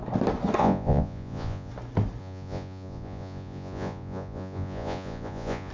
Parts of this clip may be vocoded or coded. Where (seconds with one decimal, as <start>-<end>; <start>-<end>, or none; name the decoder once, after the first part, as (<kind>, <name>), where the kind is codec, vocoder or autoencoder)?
0.6-1.7 (vocoder, Vocos); 2.2-5.7